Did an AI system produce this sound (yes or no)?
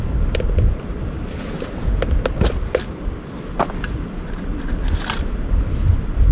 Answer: no